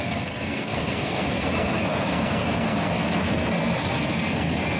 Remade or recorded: remade